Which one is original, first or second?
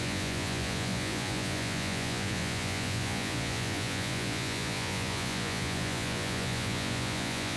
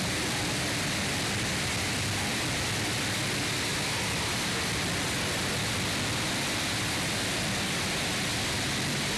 second